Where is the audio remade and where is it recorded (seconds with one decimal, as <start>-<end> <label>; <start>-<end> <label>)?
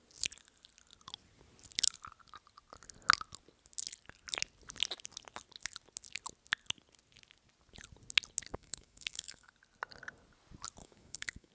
0.0-8.5 recorded; 8.5-9.5 remade; 9.5-10.8 recorded; 10.8-11.5 remade